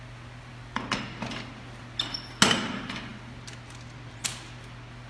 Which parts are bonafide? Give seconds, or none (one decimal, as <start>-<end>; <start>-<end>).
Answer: 0.0-5.1